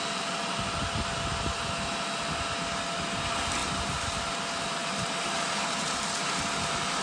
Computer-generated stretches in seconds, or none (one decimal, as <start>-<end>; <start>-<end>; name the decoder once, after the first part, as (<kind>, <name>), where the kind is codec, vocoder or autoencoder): 3.6-4.3 (vocoder, BigVGAN v2); 4.8-7.0